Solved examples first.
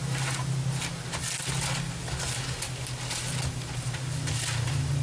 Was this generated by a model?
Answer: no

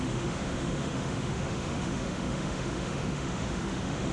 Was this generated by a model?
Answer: yes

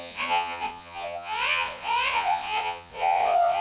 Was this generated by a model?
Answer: yes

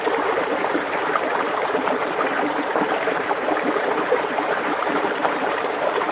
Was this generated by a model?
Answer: yes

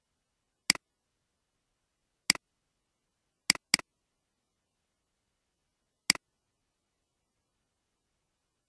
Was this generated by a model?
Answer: no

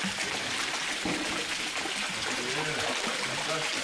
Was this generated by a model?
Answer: no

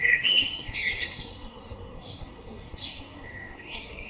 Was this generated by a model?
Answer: yes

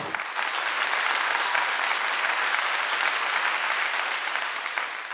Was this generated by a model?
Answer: no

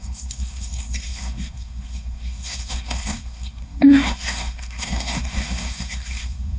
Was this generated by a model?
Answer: yes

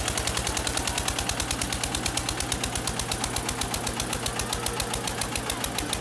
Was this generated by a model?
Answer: no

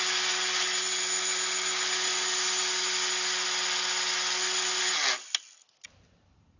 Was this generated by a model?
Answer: no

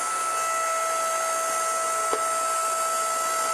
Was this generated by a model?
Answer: no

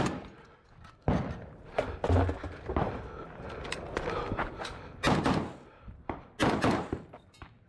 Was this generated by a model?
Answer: no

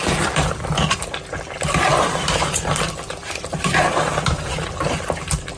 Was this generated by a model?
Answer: yes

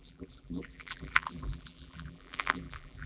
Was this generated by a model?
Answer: yes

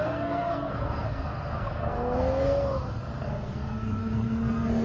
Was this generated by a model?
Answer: yes